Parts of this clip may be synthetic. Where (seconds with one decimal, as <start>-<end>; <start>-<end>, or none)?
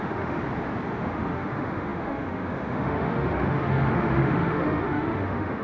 0.0-0.4; 0.9-5.6